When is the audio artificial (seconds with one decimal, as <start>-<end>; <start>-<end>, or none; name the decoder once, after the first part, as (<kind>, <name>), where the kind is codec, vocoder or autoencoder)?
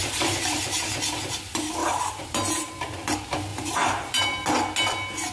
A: 0.0-0.9 (vocoder, BigVGAN v2); 1.8-2.7; 3.5-4.2